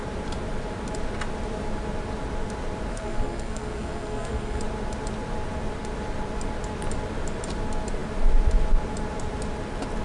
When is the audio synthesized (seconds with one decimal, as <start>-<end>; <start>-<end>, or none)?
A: 2.9-4.6